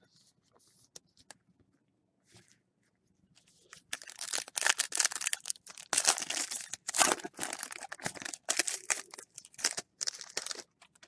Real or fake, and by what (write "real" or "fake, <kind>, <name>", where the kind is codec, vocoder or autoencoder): real